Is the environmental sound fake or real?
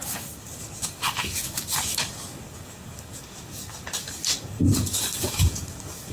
fake